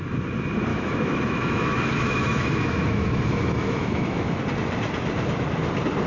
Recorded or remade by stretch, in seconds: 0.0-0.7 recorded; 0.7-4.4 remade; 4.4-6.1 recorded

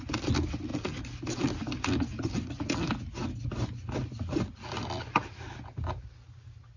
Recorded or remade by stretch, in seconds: 0.0-6.8 recorded

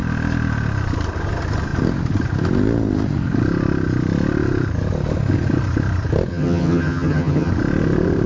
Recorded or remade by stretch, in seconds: 0.0-6.3 recorded; 6.3-7.5 remade; 7.5-8.3 recorded